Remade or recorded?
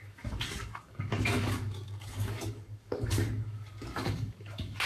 remade